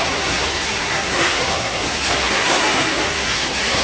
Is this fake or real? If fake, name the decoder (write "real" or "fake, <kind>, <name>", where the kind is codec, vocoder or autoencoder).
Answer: fake, codec, SNAC